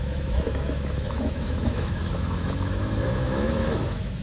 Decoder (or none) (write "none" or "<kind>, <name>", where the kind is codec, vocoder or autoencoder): autoencoder, DAC-VAE